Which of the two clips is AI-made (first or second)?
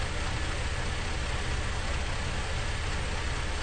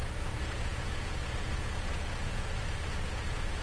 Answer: second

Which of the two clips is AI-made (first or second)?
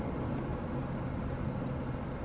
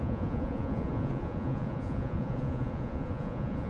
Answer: second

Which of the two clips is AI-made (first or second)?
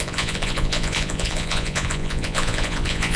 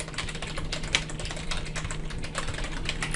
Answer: first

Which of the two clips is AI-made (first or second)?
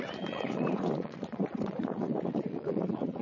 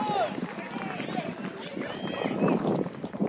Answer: first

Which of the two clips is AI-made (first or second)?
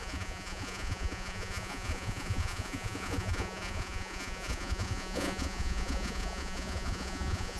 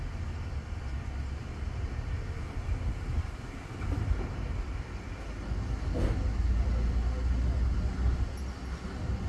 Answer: first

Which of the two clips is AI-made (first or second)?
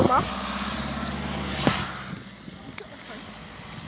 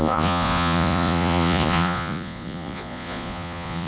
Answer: second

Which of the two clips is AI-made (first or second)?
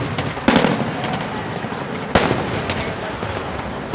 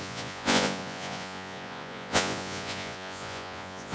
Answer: second